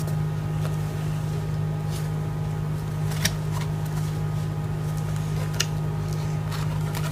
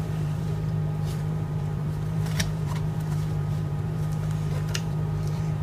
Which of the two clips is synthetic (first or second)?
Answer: second